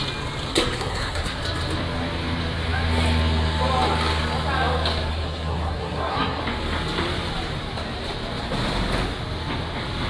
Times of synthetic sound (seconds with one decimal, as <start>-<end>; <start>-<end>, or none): 0.5-1.4; 5.1-6.4